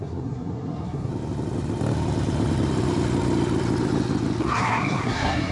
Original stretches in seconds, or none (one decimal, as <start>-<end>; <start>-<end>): 1.1-4.4